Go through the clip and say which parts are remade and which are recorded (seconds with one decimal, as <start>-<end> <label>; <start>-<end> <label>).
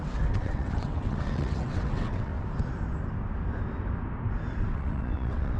0.0-2.3 remade; 2.3-4.6 recorded; 4.6-5.6 remade